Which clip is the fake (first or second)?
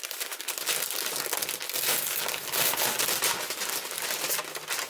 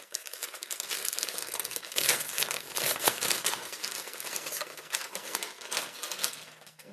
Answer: second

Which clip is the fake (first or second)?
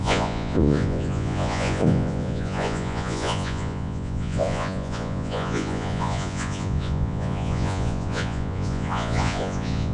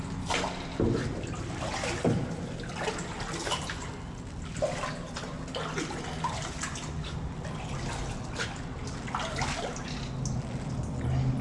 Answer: first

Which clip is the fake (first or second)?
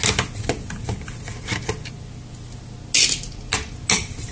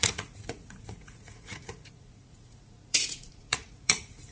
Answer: second